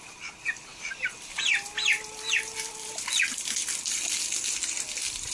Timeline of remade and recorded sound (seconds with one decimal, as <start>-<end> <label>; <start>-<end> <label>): 0.0-0.7 recorded; 0.7-1.4 remade; 1.4-5.3 recorded